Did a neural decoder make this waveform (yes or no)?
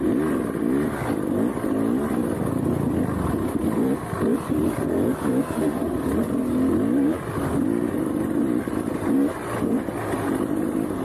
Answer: no